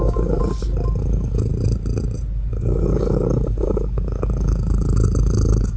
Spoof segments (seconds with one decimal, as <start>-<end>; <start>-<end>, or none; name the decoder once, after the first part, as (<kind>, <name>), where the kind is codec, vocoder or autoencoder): 0.0-0.4 (codec, DAC); 1.0-1.5; 2.5-5.8